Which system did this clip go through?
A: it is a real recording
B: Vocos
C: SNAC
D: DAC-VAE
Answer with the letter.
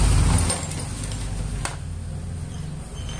A